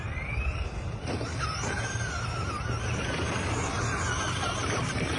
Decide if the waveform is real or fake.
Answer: real